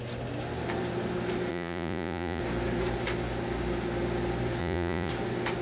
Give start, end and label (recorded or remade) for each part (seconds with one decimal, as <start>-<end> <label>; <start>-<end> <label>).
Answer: 0.0-1.5 recorded; 1.5-2.4 remade; 2.4-4.6 recorded; 4.6-5.1 remade; 5.1-5.6 recorded